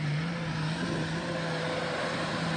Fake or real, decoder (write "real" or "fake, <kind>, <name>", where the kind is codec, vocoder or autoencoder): real